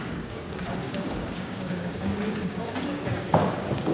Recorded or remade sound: remade